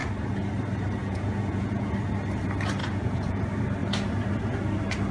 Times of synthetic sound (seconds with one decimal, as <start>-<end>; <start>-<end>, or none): 1.0-1.9; 2.8-3.4